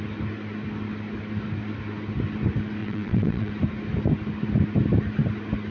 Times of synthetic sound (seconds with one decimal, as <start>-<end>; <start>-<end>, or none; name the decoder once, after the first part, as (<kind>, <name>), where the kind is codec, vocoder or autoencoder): 2.8-3.5 (vocoder, WaveNeXt)